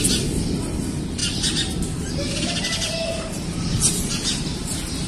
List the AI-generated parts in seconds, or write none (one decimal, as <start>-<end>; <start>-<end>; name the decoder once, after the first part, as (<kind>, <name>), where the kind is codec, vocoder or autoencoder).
3.0-4.3 (vocoder, BigVGAN v2)